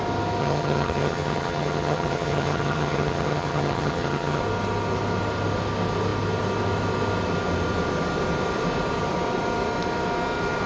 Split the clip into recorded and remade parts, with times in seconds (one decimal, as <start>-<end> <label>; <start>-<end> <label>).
0.0-0.4 recorded; 0.4-4.4 remade; 4.4-10.7 recorded